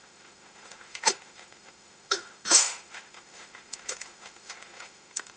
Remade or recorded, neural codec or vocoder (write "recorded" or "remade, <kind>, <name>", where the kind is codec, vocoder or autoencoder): remade, autoencoder, DAC-VAE